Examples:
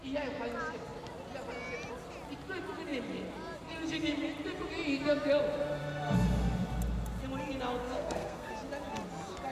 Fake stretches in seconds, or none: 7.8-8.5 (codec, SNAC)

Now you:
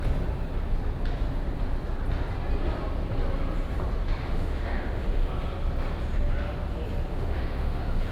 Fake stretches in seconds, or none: 4.2-5.3 (autoencoder, DAC-VAE); 7.1-8.1

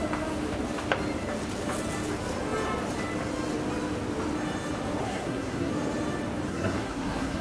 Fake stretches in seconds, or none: 5.0-5.7 (codec, SNAC); 6.5-7.4